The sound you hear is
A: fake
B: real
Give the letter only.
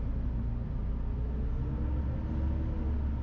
B